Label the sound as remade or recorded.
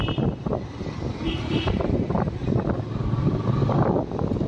recorded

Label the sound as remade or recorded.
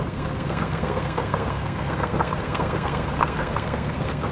remade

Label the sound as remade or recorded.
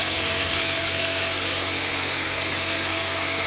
remade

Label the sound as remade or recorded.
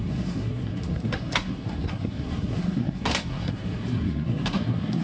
remade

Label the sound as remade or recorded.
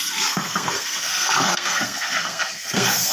remade